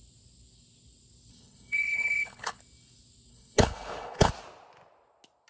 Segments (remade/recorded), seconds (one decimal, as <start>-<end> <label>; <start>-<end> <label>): 0.0-1.3 recorded; 1.3-2.6 remade; 2.6-3.3 recorded; 3.3-4.3 remade; 4.3-5.5 recorded